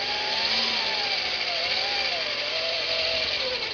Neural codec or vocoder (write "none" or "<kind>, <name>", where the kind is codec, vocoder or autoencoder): none